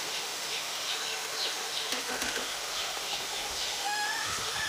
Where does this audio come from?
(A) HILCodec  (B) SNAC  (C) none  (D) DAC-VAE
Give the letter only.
D